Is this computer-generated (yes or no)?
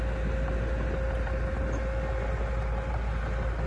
no